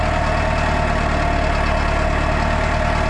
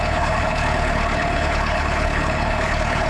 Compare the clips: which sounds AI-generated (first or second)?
second